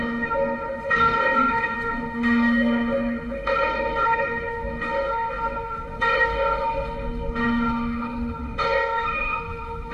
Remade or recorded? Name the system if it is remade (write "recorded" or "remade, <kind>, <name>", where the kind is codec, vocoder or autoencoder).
remade, autoencoder, DAC-VAE